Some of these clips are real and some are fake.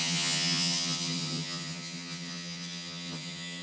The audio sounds fake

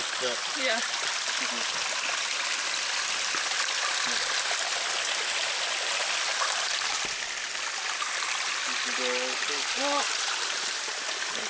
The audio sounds real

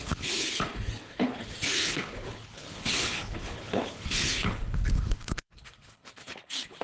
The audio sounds fake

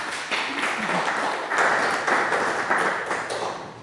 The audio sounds real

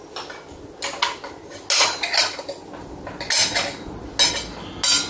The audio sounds real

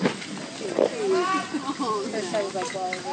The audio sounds real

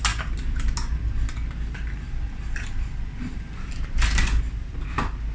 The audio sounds real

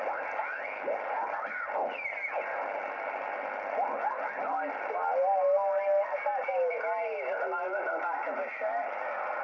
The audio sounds real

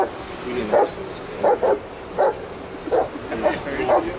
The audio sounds real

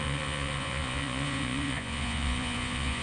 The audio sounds fake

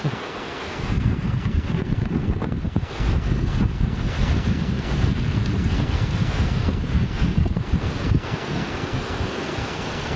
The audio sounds fake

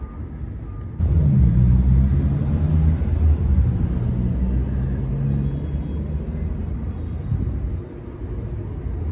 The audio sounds real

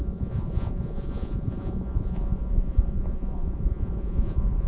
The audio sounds fake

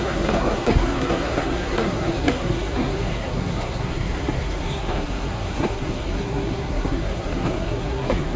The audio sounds fake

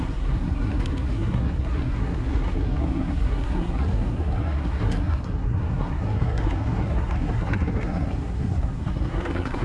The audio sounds fake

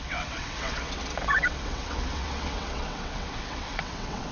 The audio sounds fake